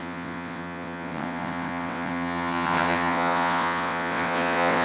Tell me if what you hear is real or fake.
fake